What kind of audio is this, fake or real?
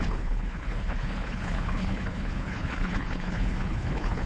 fake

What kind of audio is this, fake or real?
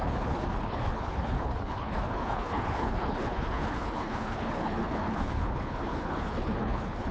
fake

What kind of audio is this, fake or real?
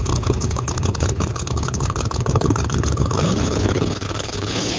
fake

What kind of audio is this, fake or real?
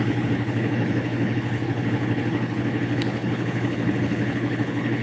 fake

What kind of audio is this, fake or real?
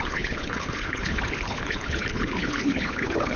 fake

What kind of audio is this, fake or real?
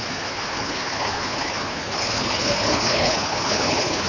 fake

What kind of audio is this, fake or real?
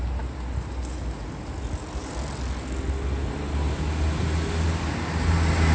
real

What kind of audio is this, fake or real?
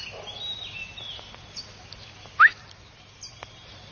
real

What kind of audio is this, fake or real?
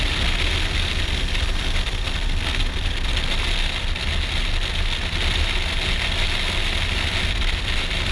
real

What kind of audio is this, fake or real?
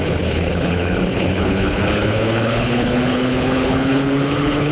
fake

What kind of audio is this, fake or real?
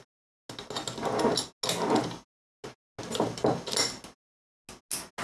real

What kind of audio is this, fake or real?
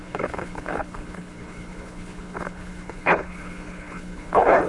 fake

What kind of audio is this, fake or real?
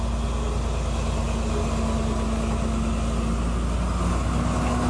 real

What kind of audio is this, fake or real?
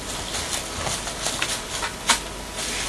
real